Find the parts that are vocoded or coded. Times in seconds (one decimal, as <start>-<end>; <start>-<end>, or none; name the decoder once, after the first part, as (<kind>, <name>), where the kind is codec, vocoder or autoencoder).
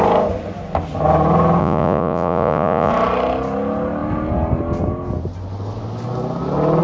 1.6-2.9 (vocoder, Vocos)